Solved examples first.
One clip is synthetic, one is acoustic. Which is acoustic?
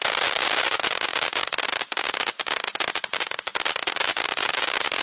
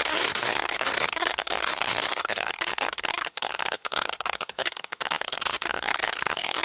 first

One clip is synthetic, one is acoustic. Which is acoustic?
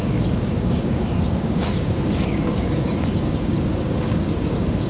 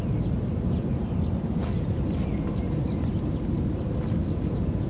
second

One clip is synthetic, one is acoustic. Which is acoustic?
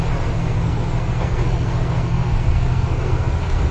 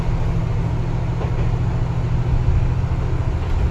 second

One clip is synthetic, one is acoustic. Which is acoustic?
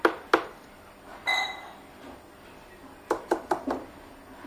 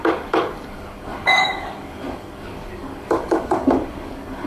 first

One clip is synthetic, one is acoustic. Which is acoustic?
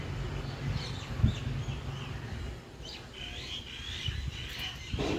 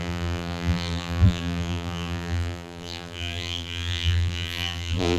first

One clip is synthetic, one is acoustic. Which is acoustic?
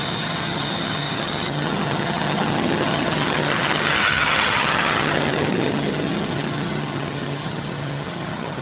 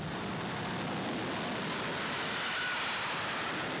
second